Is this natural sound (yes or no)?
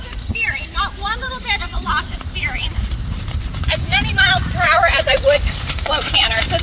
no